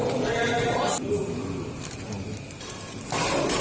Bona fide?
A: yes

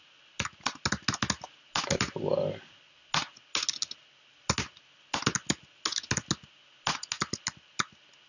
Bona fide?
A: yes